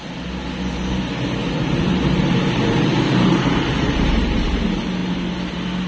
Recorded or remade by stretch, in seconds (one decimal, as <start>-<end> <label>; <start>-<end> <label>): 0.0-1.4 recorded; 1.4-4.6 remade; 4.6-5.9 recorded